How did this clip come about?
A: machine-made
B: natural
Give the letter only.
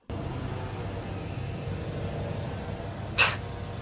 B